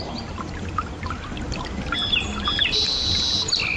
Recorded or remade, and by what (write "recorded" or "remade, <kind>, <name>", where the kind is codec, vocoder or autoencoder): recorded